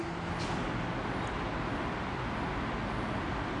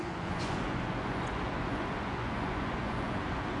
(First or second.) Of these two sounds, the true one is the first